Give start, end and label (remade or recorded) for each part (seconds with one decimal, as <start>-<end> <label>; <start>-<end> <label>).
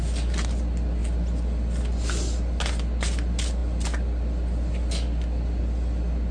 0.0-6.3 recorded